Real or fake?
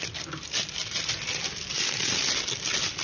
real